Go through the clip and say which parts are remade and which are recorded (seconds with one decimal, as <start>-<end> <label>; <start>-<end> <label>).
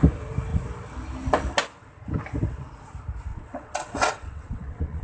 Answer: 0.0-3.3 recorded; 3.3-5.0 remade